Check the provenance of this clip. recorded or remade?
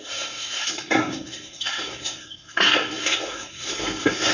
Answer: remade